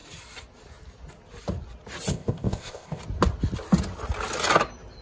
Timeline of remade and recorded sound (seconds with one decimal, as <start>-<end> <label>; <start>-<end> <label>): 0.0-2.1 recorded; 2.1-3.0 remade; 3.0-5.0 recorded